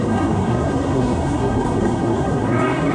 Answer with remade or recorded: remade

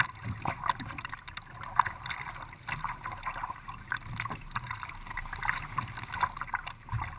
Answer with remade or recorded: recorded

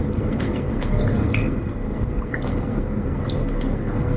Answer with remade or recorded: remade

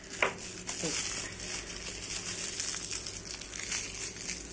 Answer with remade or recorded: recorded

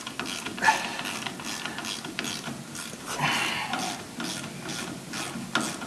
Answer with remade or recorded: recorded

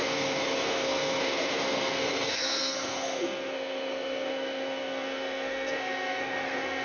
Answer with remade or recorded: remade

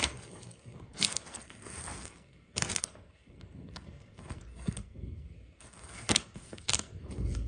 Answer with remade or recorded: remade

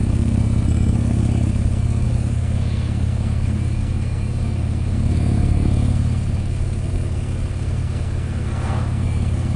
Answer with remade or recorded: remade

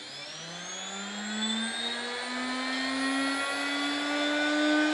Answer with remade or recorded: recorded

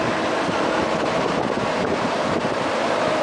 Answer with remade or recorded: recorded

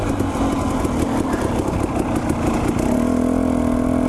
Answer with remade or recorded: recorded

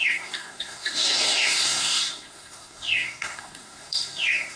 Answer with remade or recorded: remade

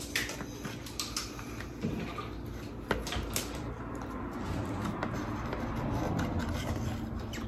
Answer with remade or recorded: recorded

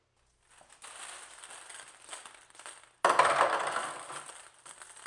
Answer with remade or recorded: recorded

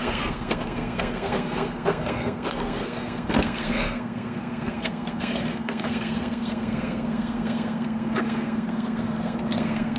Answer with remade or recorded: remade